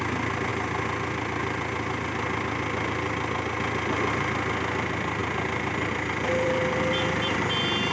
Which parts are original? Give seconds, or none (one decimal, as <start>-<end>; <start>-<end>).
0.5-4.1